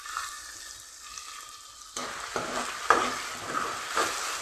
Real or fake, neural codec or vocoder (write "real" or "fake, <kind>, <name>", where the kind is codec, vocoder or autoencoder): real